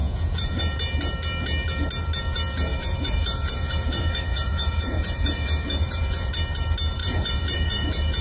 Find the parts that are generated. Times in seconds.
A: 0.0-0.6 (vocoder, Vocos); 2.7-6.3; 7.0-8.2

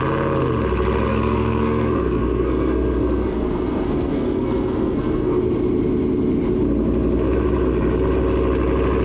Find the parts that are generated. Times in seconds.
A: 1.1-5.4 (codec, SNAC)

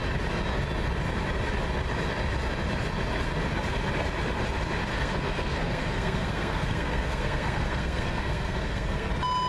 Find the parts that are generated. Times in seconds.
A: 4.9-9.1 (codec, SNAC)

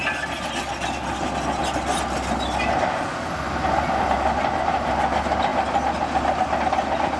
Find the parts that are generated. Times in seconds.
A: none

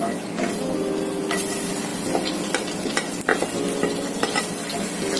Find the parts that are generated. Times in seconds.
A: none

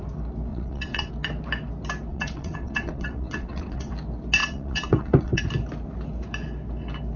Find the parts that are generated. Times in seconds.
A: 0.5-1.1 (vocoder, WaveNeXt); 2.1-3.9; 4.4-5.4